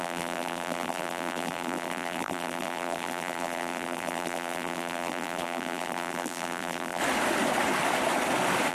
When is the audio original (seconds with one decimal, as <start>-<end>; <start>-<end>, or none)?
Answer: 7.0-8.7